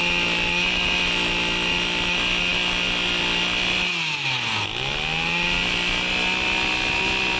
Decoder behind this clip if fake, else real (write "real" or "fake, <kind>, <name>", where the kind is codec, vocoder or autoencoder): real